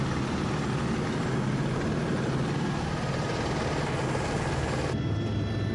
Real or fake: real